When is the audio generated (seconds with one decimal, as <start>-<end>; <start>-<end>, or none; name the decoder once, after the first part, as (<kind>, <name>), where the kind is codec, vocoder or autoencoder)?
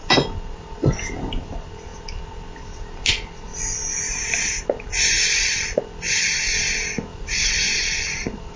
3.5-4.6 (vocoder, BigVGAN v2); 7.1-8.6